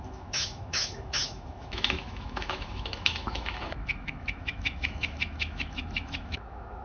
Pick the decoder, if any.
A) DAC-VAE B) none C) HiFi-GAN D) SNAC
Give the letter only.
A